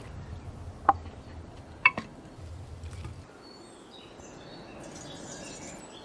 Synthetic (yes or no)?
no